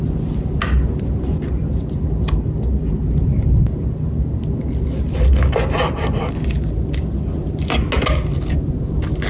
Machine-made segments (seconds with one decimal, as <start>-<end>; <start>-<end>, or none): none